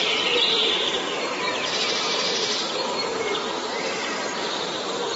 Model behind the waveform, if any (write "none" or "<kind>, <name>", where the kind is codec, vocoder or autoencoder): vocoder, BigVGAN v2